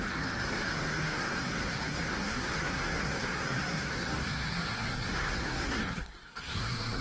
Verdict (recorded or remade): remade